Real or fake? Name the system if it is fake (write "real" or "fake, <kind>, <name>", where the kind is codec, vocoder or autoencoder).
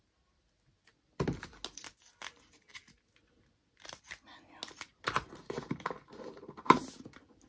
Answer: real